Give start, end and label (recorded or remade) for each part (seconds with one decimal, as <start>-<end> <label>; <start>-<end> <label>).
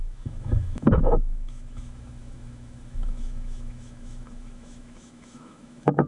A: 0.0-6.1 remade